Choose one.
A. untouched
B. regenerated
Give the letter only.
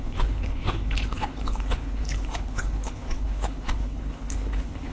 B